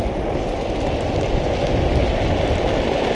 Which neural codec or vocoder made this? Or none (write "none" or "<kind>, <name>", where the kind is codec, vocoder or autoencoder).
none